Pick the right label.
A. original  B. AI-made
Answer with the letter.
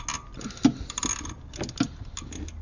A